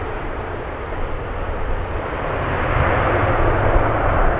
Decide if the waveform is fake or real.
real